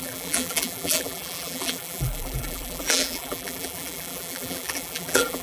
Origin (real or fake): fake